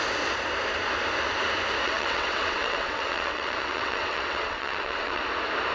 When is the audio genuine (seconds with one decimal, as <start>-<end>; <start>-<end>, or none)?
0.0-1.8; 5.2-5.7